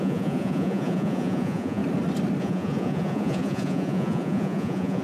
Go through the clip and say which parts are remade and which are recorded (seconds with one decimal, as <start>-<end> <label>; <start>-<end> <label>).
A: 0.0-1.8 remade; 1.8-2.4 recorded; 2.4-5.0 remade